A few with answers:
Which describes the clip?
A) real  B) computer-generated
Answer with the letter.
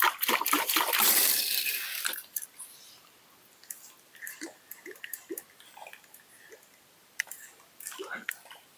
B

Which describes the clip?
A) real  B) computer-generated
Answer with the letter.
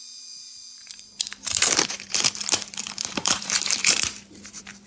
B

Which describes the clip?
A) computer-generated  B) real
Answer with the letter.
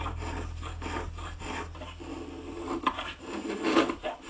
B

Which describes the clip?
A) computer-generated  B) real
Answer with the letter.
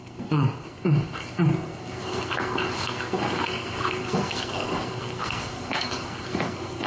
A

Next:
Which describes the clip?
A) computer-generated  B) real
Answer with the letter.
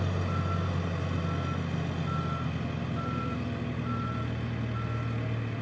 B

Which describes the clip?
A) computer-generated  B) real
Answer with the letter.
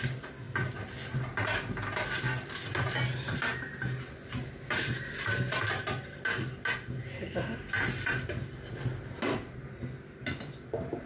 B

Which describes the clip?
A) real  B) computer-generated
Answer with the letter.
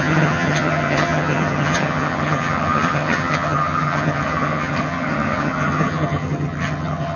B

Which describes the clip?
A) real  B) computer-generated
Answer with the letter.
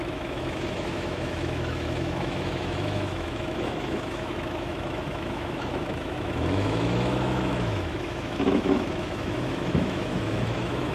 B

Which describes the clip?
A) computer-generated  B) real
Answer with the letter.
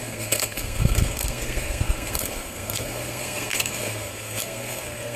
A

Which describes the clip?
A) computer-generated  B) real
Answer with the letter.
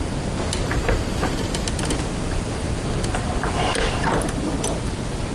B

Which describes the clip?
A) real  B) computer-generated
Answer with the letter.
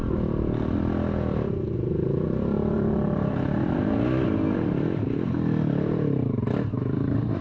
A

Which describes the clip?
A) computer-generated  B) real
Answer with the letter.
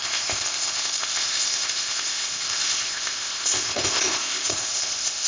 A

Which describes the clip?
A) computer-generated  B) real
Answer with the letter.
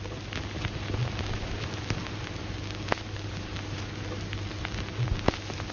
B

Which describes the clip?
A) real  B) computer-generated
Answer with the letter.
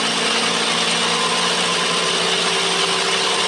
A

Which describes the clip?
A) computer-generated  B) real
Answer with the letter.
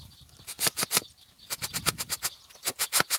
B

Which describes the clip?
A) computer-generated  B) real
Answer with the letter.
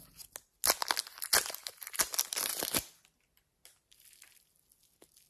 B